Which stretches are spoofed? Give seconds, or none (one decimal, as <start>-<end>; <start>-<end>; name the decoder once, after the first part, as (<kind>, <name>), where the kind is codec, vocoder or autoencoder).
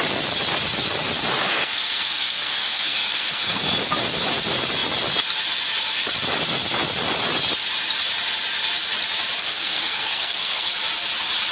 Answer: 1.4-3.6 (codec, SNAC); 9.4-10.7